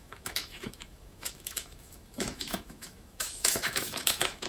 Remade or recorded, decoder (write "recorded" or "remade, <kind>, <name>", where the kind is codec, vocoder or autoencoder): remade, autoencoder, DAC-VAE